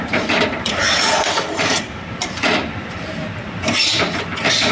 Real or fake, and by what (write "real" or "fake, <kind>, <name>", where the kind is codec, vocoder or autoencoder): fake, vocoder, BigVGAN v2